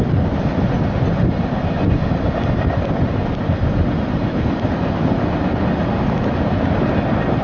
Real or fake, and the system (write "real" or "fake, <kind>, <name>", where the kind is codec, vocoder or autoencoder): real